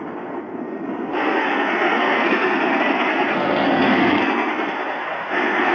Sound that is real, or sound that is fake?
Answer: fake